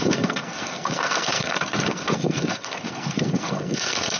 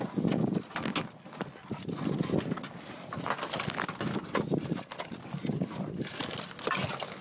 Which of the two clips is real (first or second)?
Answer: second